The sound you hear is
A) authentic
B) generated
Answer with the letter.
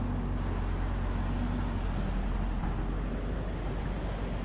A